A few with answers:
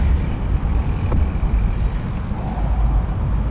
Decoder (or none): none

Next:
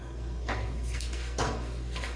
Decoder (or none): codec, SNAC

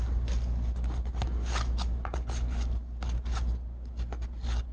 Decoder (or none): none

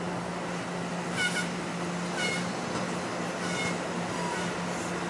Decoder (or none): none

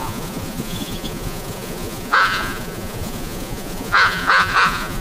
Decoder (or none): vocoder, Vocos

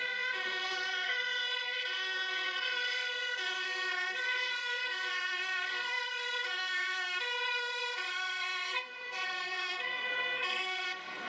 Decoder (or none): codec, SNAC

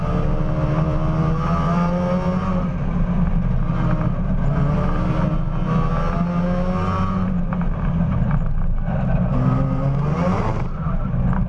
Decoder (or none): none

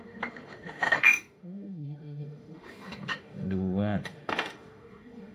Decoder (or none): autoencoder, DAC-VAE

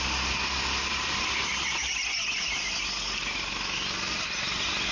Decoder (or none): none